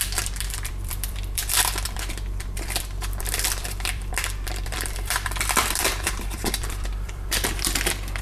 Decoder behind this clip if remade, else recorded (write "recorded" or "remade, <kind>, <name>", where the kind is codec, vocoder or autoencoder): remade, vocoder, BigVGAN v2